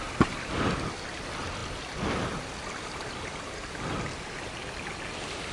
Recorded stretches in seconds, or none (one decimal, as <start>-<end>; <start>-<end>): 0.0-5.5